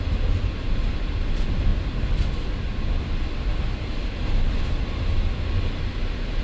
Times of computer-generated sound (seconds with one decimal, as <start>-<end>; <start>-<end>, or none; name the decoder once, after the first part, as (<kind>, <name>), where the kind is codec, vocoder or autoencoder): none